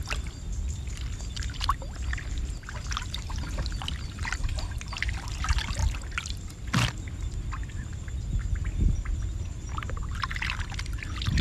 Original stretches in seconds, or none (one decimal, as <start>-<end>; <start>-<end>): 0.0-11.4